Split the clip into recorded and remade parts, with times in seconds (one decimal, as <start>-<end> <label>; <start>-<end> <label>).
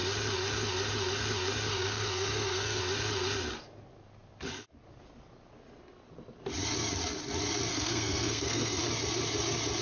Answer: 0.0-1.7 recorded; 1.7-2.8 remade; 2.8-7.7 recorded; 7.7-8.8 remade; 8.8-9.8 recorded